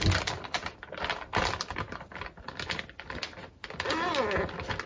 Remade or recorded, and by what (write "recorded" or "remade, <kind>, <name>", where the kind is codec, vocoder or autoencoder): recorded